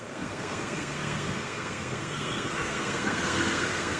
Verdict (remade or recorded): remade